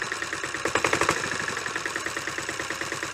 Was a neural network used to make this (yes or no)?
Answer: no